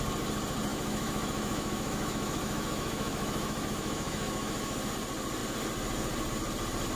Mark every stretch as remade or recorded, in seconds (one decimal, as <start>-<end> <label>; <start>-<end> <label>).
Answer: 0.0-0.7 recorded; 0.7-4.9 remade; 4.9-7.0 recorded